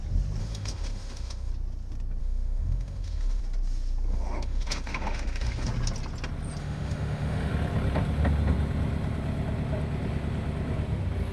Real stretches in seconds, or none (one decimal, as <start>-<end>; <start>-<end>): 0.0-0.4; 1.5-2.2; 3.4-4.1; 5.7-6.6; 7.5-11.3